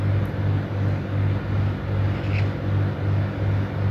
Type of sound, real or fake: real